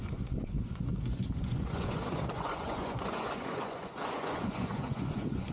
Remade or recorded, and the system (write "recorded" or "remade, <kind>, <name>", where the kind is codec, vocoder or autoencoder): remade, vocoder, Vocos